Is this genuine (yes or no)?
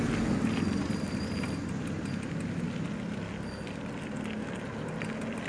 yes